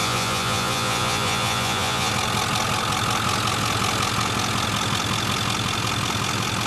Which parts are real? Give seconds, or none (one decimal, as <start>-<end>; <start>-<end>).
2.1-6.7